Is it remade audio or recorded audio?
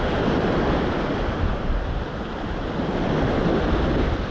recorded